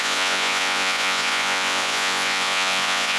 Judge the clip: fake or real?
fake